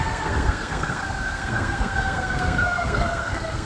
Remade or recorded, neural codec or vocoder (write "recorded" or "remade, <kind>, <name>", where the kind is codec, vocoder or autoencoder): remade, codec, SNAC